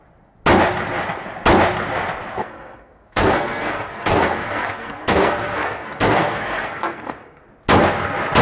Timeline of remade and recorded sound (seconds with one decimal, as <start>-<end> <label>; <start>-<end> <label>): 0.0-2.4 recorded; 2.4-7.4 remade; 7.4-8.4 recorded